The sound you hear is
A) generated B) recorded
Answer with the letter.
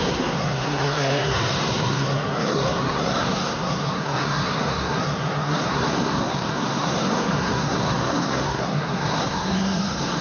A